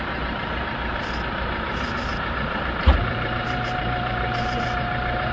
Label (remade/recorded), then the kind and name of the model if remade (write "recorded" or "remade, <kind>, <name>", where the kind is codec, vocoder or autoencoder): remade, vocoder, BigVGAN v2